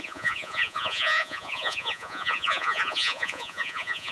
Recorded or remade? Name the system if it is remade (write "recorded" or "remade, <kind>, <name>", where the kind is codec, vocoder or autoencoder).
remade, vocoder, Vocos